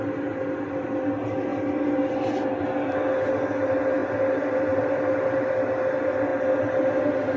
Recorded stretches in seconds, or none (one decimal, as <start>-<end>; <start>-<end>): 0.0-4.0; 5.5-7.4